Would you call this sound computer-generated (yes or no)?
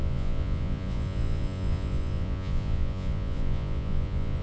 yes